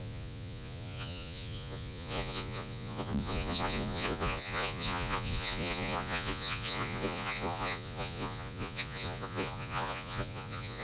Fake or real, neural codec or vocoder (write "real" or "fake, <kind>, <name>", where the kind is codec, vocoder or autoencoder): fake, vocoder, Vocos